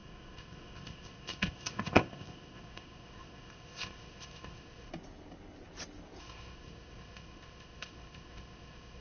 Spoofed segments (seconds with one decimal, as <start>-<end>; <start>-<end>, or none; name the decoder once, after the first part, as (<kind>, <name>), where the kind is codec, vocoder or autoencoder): 0.0-4.9 (codec, ZipCodec); 6.2-9.0